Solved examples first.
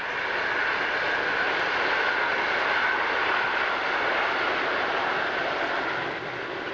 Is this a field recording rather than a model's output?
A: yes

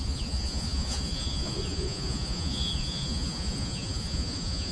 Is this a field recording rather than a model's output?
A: no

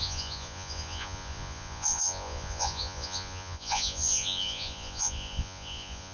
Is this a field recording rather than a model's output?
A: no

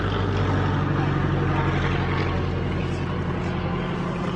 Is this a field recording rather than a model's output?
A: yes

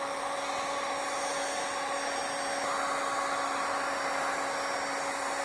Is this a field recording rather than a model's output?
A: yes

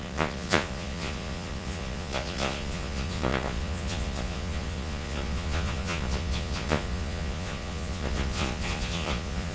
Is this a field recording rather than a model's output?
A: no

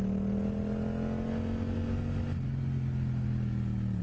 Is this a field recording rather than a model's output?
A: yes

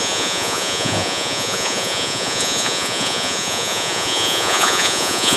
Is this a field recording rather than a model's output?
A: no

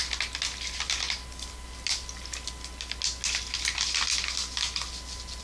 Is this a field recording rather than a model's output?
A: yes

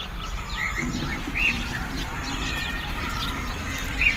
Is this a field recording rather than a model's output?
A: yes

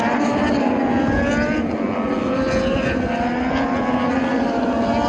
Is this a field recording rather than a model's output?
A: yes